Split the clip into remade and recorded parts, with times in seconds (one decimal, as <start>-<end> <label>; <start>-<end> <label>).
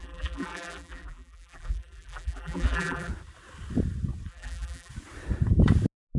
0.0-3.1 remade; 3.1-4.3 recorded; 4.3-4.9 remade; 4.9-6.2 recorded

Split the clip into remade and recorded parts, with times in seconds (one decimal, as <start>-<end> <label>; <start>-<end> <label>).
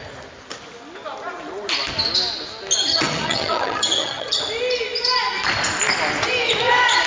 0.0-2.9 recorded; 2.9-4.4 remade; 4.4-7.1 recorded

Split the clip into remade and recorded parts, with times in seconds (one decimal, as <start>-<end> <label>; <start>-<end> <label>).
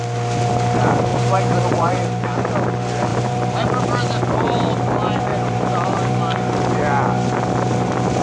0.0-1.1 recorded; 1.1-2.5 remade; 2.5-3.1 recorded; 3.1-3.8 remade; 3.8-5.3 recorded; 5.3-6.2 remade; 6.2-8.2 recorded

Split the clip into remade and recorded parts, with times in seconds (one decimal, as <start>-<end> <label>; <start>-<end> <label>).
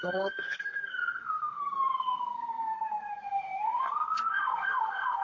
0.0-5.2 remade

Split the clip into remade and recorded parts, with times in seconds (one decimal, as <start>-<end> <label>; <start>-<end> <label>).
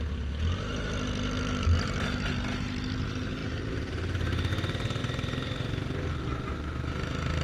0.0-7.4 recorded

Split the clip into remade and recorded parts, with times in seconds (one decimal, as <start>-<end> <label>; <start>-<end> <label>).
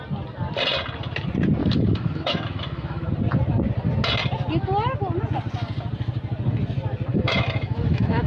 0.0-1.6 recorded; 1.6-3.1 remade; 3.1-7.1 recorded; 7.1-8.3 remade